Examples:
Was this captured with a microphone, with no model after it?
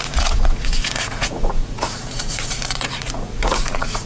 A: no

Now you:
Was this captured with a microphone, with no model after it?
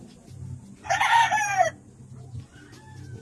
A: yes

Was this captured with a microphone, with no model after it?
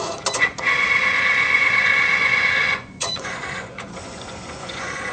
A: no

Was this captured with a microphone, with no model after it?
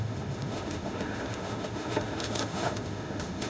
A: no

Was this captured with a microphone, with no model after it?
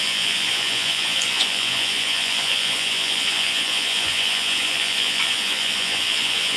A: no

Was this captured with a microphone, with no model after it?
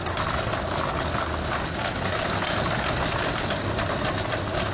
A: yes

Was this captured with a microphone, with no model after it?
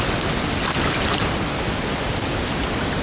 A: yes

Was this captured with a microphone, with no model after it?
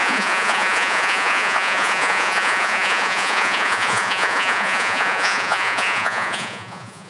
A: no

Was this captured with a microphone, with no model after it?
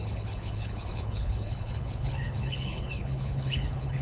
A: no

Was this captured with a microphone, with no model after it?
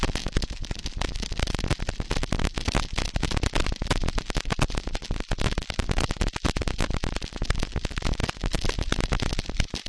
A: no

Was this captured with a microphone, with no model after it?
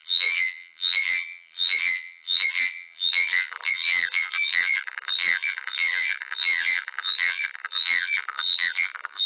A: no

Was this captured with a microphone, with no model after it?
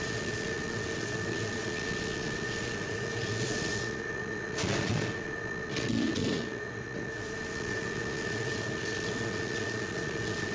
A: no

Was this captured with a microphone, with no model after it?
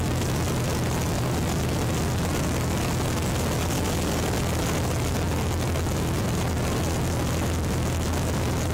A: yes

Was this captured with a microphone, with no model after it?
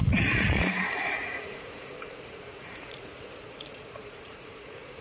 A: no